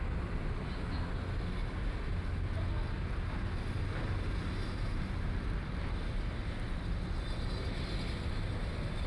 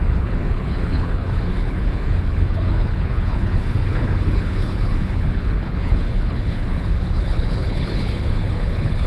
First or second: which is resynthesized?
second